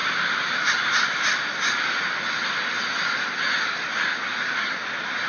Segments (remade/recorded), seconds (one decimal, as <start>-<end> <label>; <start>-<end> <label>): 0.0-5.3 recorded